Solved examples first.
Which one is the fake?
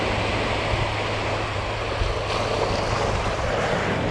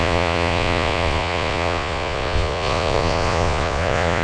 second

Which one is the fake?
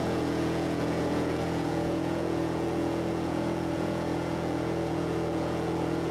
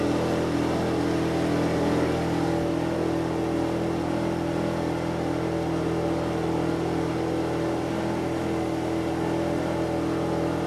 first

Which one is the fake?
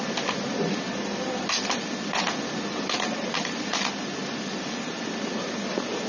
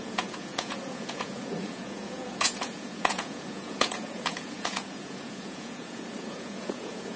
second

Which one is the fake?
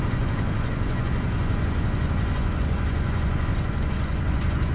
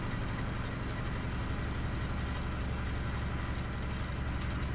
first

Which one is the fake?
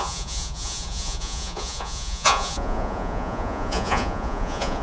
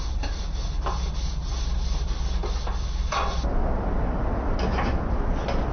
first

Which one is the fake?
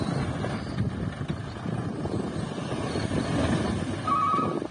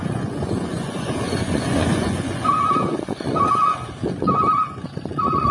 second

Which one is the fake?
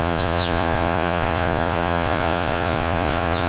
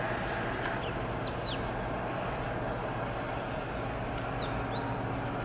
first